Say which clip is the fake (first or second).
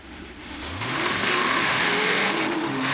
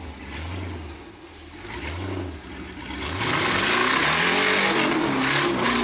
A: first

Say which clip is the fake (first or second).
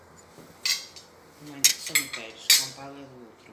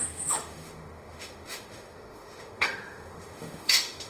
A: second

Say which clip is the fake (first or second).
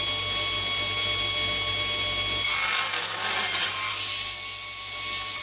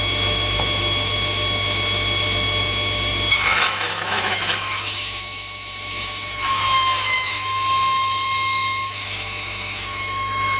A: second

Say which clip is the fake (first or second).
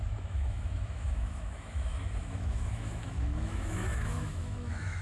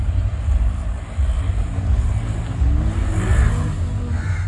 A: first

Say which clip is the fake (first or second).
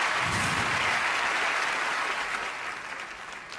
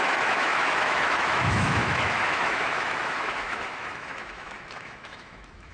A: second